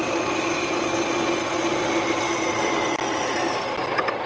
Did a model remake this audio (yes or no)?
no